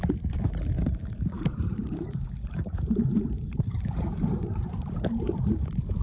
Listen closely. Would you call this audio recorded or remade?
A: remade